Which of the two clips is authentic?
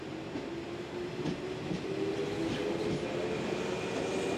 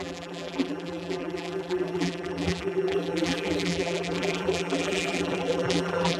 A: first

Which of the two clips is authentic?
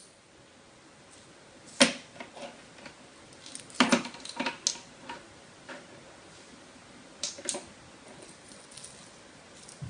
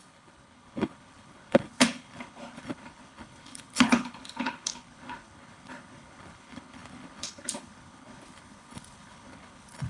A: first